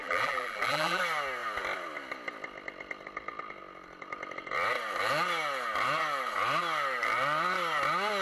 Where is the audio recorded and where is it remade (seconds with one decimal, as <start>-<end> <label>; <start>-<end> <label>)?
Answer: 0.0-1.0 remade; 1.0-8.2 recorded